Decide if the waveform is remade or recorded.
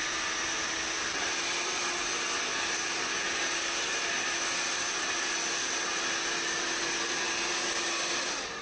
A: recorded